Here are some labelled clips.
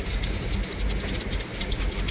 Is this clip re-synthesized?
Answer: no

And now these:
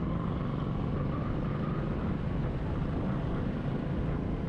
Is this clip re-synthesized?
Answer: no